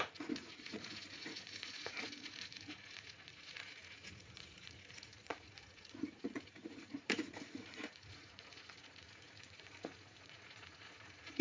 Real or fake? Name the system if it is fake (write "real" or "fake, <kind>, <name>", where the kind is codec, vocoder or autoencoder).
fake, vocoder, Vocos